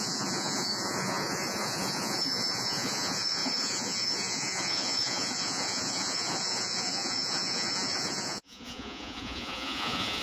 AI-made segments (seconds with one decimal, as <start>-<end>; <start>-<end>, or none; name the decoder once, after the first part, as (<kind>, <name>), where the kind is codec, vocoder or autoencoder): 0.0-10.2 (vocoder, Vocos)